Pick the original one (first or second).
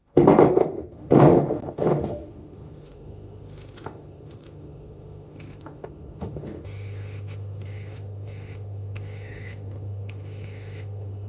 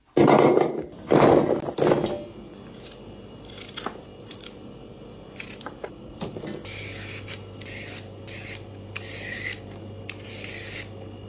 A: second